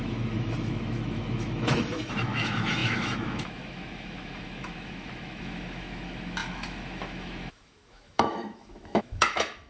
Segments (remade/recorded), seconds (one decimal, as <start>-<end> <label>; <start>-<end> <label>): 0.0-9.7 remade